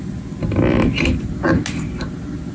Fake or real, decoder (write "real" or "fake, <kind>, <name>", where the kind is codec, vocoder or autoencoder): real